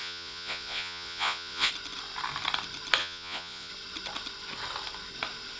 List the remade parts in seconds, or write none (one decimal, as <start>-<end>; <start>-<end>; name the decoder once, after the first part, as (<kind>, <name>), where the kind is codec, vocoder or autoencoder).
0.0-1.7 (vocoder, Vocos); 3.0-3.7